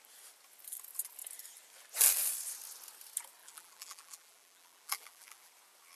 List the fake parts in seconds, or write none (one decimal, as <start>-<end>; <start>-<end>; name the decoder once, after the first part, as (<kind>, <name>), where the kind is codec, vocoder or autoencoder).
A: 3.4-5.5 (vocoder, BigVGAN v2)